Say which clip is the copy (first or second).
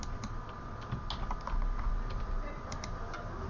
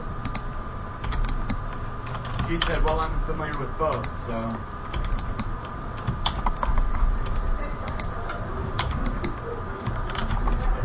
second